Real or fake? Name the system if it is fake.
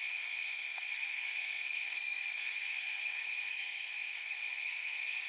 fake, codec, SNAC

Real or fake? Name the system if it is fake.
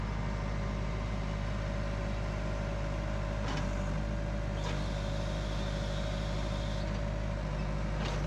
real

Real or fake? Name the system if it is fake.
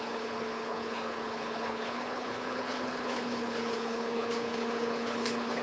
fake, codec, HILCodec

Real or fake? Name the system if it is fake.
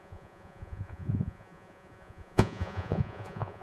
fake, vocoder, Vocos